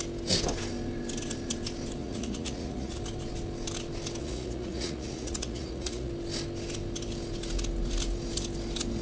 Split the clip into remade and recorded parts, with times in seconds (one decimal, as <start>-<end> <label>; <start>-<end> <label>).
0.0-2.0 recorded; 2.0-3.0 remade; 3.0-4.2 recorded; 4.2-6.1 remade; 6.1-9.0 recorded